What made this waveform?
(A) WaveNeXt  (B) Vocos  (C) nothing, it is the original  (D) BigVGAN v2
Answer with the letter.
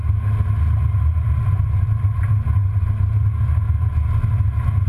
C